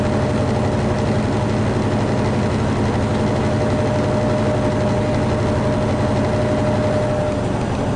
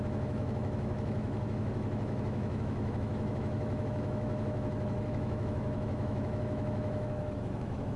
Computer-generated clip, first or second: second